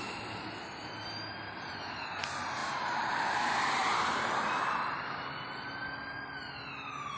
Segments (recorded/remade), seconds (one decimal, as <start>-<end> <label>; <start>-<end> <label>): 0.0-7.2 recorded